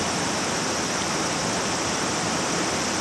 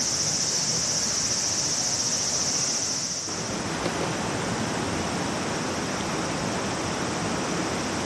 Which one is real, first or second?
second